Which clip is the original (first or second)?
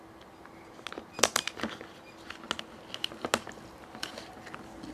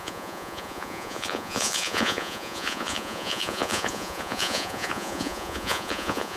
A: first